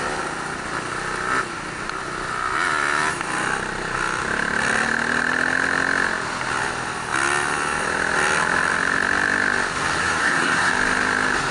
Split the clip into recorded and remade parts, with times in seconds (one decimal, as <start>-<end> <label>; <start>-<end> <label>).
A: 0.0-10.0 recorded; 10.0-10.7 remade; 10.7-11.5 recorded